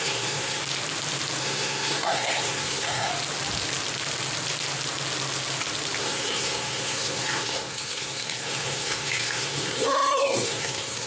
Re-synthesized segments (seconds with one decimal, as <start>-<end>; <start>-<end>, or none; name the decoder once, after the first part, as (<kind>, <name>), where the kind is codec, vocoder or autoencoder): 0.0-0.6 (codec, SNAC); 1.4-3.1; 6.0-11.1